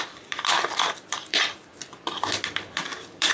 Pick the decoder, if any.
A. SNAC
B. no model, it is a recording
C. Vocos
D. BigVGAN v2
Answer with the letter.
D